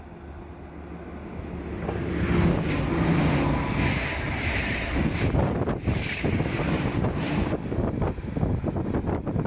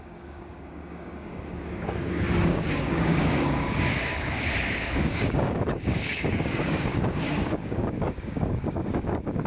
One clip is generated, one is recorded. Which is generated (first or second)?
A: second